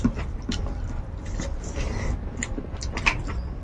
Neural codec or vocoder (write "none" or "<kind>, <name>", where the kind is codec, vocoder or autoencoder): none